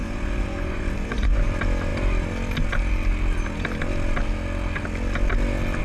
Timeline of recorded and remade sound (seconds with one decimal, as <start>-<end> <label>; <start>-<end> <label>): 0.0-1.4 remade; 1.4-5.8 recorded